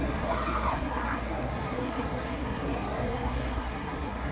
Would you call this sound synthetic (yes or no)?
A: yes